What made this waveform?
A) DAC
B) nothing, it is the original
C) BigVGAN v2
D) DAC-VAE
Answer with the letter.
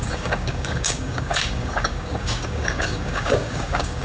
A